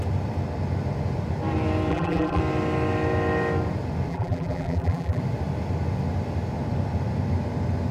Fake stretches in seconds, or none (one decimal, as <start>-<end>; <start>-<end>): 1.9-2.4; 4.1-5.2